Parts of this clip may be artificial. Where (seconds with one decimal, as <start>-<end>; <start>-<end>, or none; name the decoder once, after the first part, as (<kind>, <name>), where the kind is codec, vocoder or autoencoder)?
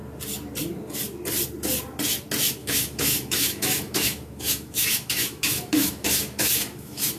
2.6-7.2 (autoencoder, DAC-VAE)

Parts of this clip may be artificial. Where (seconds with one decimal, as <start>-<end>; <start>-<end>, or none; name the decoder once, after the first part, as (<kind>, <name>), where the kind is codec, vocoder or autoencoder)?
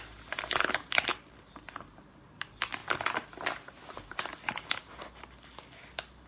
none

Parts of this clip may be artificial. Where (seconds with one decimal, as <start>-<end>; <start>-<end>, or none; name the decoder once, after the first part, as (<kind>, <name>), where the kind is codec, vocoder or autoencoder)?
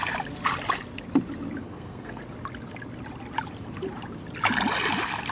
1.6-2.2 (codec, SNAC)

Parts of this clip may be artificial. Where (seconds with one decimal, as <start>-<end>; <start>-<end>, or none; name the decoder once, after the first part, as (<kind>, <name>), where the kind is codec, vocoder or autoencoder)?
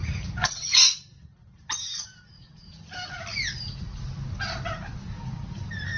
0.0-1.0 (vocoder, Vocos)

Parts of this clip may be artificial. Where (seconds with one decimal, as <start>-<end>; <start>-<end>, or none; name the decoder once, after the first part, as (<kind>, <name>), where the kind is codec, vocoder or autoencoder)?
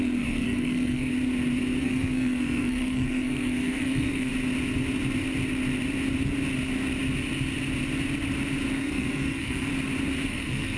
0.0-1.1 (codec, SNAC); 1.8-4.3; 8.7-9.7; 10.3-10.8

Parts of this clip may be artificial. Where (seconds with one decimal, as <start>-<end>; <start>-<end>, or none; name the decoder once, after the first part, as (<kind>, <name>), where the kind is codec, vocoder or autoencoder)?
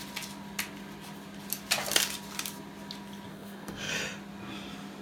3.3-3.9 (codec, SNAC)